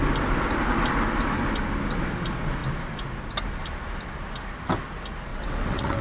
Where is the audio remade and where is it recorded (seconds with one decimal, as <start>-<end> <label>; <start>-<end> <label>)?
0.0-5.3 recorded; 5.3-6.0 remade